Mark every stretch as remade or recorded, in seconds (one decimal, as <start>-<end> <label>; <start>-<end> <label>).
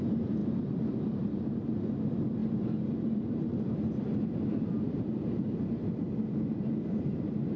0.0-7.6 remade